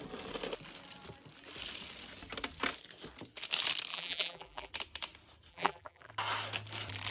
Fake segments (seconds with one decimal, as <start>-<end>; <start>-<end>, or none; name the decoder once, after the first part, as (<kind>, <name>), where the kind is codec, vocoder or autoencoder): 3.9-4.7 (vocoder, BigVGAN v2); 5.5-6.1